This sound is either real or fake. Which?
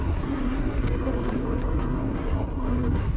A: fake